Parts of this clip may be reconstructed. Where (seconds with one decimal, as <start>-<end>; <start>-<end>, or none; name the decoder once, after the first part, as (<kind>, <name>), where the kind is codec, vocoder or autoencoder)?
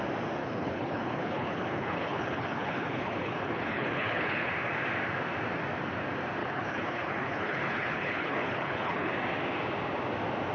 0.4-4.5 (codec, HILCodec); 6.4-9.1